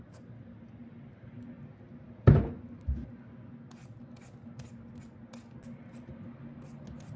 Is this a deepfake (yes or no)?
no